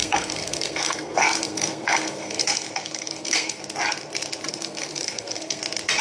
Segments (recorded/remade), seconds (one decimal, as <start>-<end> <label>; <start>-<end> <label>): 0.0-3.6 remade; 3.6-4.5 recorded; 4.5-5.6 remade; 5.6-6.0 recorded